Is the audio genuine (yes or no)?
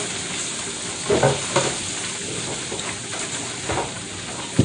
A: yes